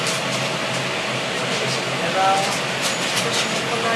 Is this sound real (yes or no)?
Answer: yes